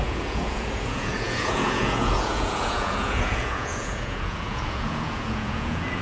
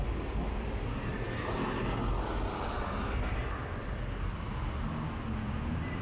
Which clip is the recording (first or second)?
second